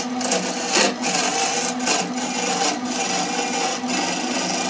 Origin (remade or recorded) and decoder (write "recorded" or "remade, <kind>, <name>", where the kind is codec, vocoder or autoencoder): recorded